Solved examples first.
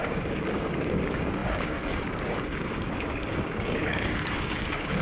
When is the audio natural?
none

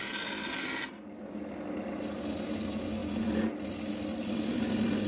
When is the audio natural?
0.0-5.1

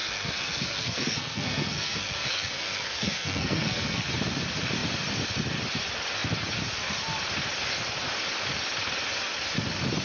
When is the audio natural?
4.1-10.0

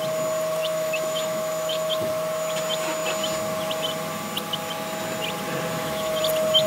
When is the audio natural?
0.0-0.6; 2.1-5.7; 6.2-6.7